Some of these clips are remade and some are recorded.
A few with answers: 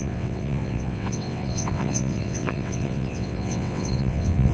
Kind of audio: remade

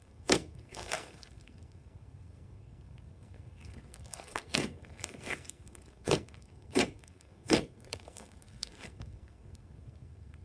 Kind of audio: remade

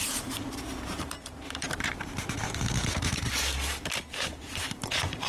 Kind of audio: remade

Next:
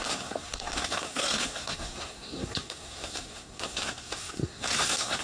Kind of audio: remade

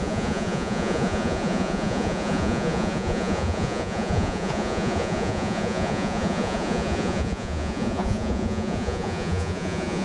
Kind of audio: remade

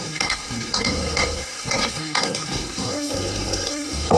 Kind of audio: remade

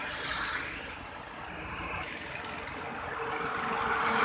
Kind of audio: recorded